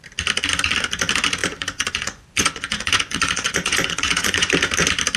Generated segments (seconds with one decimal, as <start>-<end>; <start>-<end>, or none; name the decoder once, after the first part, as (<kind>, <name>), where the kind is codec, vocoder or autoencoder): 1.4-4.5 (vocoder, Vocos)